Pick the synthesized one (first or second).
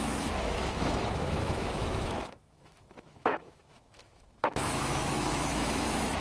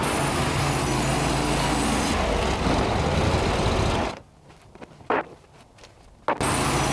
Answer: first